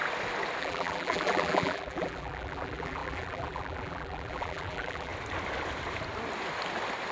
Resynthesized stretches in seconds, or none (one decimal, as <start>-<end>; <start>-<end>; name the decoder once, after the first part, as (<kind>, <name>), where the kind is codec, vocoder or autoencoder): 0.6-5.1 (vocoder, BigVGAN v2)